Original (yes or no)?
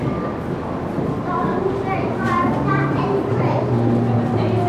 yes